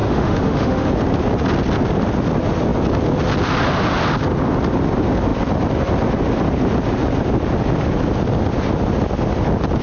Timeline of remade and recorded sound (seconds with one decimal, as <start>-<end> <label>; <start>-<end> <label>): 0.0-0.9 remade; 0.9-9.8 recorded